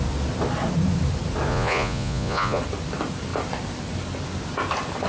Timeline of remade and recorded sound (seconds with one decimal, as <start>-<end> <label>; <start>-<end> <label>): 0.0-1.5 recorded; 1.5-2.6 remade; 2.6-5.1 recorded